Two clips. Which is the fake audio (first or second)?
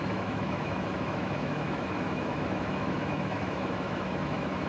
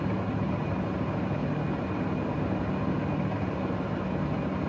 first